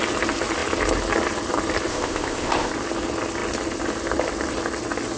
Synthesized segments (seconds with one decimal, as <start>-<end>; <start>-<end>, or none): 1.9-2.7